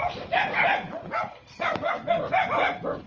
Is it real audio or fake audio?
real